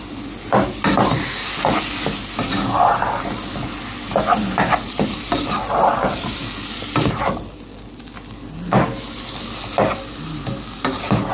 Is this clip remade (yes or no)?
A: no